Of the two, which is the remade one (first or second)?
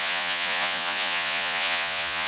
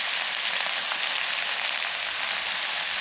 first